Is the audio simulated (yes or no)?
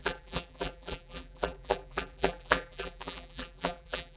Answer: yes